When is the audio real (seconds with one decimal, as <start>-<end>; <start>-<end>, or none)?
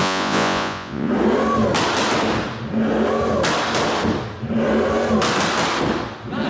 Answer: 1.1-6.5